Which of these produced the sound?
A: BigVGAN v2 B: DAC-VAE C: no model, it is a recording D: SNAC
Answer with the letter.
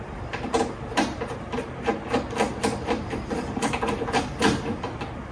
A